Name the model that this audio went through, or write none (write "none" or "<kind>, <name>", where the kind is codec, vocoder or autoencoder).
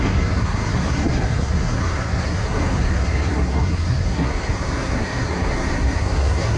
codec, SNAC